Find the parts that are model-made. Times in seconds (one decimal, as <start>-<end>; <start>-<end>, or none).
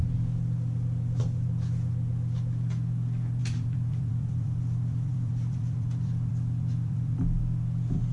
3.4-7.4